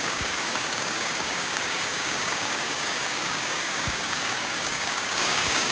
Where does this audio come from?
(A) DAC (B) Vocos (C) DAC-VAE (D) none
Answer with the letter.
A